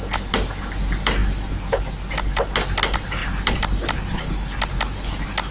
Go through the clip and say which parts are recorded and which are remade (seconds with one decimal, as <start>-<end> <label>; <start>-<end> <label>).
0.0-5.5 recorded